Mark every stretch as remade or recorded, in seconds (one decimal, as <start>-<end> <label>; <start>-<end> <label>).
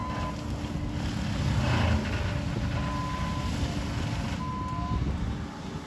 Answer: 0.0-5.9 recorded